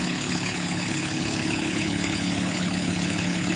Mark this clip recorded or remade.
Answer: remade